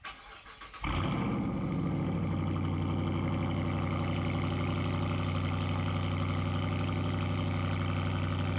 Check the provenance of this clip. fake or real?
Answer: real